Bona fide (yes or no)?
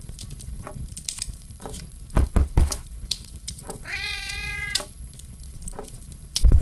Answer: no